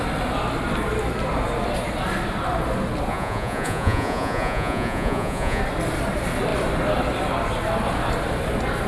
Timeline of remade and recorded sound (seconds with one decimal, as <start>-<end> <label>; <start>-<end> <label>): 0.0-3.1 recorded; 3.1-5.6 remade; 5.6-8.9 recorded